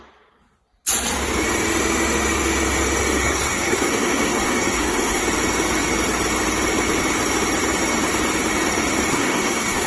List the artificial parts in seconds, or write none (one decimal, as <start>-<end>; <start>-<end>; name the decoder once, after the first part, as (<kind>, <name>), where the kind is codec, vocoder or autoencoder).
3.1-5.2 (codec, SNAC); 9.1-9.9